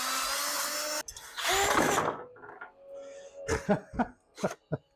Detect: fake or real real